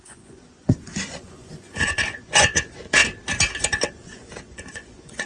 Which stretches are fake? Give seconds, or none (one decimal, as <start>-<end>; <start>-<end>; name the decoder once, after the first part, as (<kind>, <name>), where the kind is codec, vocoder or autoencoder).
0.0-3.0 (vocoder, Vocos); 3.9-5.3